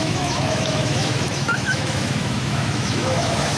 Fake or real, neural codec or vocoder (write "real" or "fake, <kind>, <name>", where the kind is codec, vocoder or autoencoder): fake, autoencoder, DAC-VAE